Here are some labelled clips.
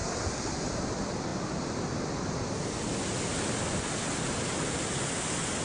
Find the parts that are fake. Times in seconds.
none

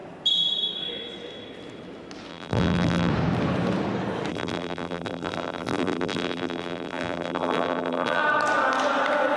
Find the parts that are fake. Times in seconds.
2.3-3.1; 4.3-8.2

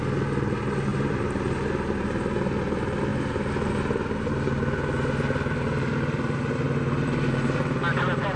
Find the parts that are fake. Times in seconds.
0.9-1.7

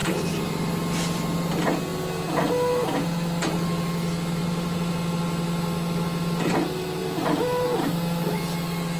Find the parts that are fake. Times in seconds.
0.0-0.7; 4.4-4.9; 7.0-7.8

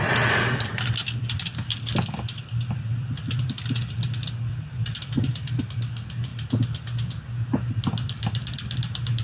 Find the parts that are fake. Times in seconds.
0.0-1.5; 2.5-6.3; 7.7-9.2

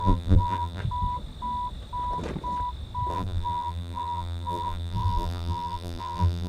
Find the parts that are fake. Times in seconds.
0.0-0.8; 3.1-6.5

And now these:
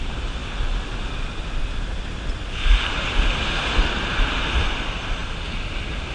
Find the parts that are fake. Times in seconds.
0.0-0.4; 1.6-5.2

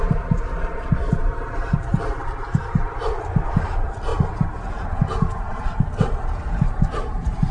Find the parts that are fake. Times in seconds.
0.0-4.1; 5.4-7.5